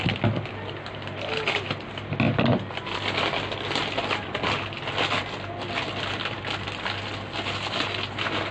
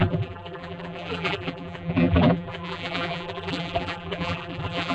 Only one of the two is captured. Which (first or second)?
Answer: first